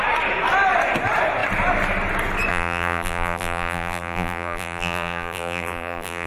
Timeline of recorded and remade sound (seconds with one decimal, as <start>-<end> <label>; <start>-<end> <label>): 0.0-2.5 recorded; 2.5-6.3 remade

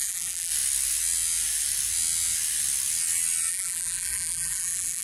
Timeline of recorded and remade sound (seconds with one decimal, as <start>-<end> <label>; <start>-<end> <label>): 0.0-0.5 remade; 0.5-3.5 recorded; 3.5-5.0 remade

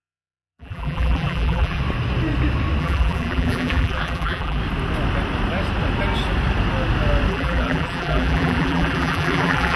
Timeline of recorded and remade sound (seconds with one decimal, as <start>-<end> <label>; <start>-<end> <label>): 0.0-1.8 remade; 1.8-2.8 recorded; 2.8-4.6 remade; 4.6-7.3 recorded; 7.3-9.8 remade

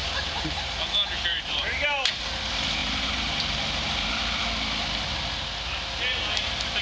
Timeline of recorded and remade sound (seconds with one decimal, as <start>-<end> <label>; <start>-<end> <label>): 0.0-0.7 remade; 0.7-1.3 recorded; 1.3-2.2 remade; 2.2-2.8 recorded; 2.8-4.1 remade; 4.1-6.8 recorded

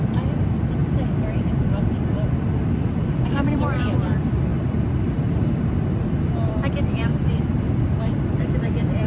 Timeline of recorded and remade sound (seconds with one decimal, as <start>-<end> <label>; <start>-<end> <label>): 0.0-0.8 remade; 0.8-1.8 recorded; 1.8-9.1 remade

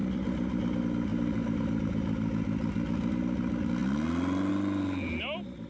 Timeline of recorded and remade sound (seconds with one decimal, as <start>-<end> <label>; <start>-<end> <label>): 0.0-1.1 recorded; 1.1-1.7 remade; 1.7-5.7 recorded

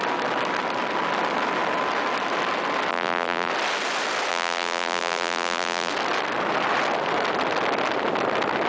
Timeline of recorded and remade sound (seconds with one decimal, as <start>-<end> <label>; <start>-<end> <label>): 0.0-2.9 recorded; 2.9-3.5 remade; 3.5-4.3 recorded; 4.3-5.9 remade; 5.9-8.7 recorded